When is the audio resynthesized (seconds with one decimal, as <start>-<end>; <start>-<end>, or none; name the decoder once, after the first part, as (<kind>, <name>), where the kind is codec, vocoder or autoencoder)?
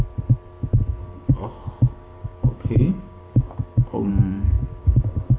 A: 1.0-4.1 (codec, DAC); 4.8-5.4